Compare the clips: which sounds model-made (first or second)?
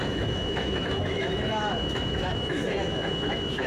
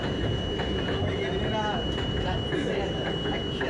first